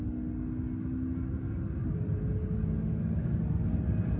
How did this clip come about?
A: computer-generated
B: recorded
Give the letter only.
B